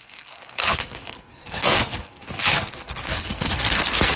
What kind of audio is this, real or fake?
fake